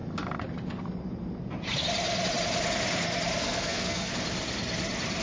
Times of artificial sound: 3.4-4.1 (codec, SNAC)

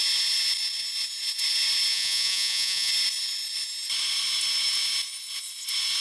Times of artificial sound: 1.9-2.9 (vocoder, Vocos)